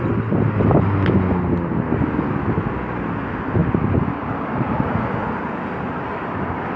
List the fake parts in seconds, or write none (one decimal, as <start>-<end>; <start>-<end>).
none